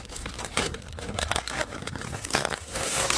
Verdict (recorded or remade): remade